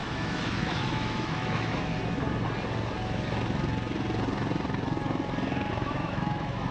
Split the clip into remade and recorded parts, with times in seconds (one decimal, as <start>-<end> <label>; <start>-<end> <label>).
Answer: 0.0-1.9 remade; 1.9-5.7 recorded; 5.7-6.7 remade